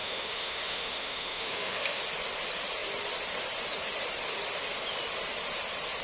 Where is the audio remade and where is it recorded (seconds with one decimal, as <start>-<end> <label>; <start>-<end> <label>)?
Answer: 0.0-2.0 remade; 2.0-6.0 recorded